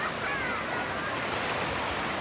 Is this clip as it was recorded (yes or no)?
yes